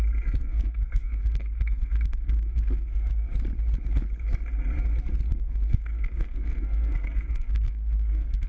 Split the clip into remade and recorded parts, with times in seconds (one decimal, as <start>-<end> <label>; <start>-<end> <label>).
0.0-0.4 recorded; 0.4-3.1 remade; 3.1-5.3 recorded; 5.3-8.5 remade